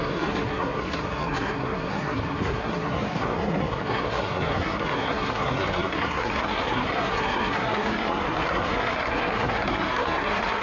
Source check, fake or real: fake